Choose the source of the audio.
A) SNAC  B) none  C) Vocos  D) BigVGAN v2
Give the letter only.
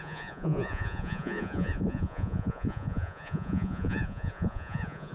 C